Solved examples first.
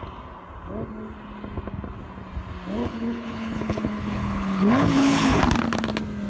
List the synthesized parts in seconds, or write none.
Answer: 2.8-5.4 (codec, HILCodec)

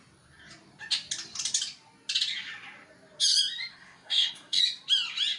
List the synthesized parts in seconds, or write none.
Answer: 3.7-4.6 (codec, SNAC)

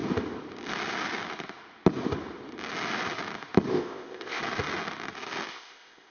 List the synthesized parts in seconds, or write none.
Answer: 3.7-4.4 (codec, ZipCodec); 5.5-6.1

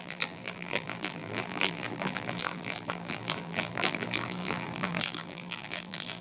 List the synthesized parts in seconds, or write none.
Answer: 0.0-6.2 (vocoder, BigVGAN v2)

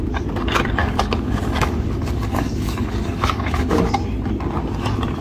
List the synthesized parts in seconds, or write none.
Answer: 0.8-3.9 (codec, DAC)

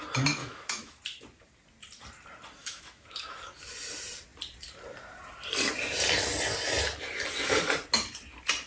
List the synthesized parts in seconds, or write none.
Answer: 0.4-1.0 (autoencoder, DAC-VAE); 2.6-3.4

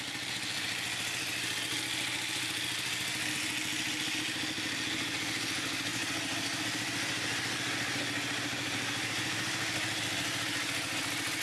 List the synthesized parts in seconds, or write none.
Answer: none